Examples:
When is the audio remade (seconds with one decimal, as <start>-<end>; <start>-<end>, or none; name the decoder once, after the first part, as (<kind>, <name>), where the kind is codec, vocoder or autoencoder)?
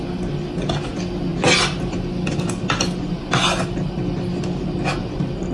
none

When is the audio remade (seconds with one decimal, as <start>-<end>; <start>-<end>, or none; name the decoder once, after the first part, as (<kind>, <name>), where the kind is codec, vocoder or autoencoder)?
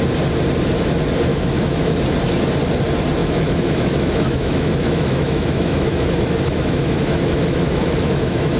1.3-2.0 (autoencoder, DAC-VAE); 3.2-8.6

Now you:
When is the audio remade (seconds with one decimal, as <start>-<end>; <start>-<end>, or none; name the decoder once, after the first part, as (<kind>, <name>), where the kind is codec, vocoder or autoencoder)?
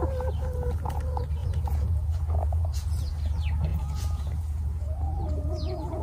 1.4-3.0 (vocoder, Vocos); 3.7-6.0